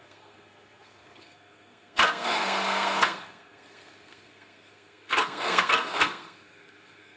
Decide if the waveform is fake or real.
fake